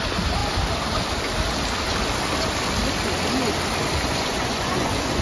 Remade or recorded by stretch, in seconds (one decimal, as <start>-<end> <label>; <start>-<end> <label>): 0.0-4.1 recorded; 4.1-5.2 remade